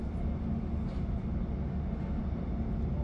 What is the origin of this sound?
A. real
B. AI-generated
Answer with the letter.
A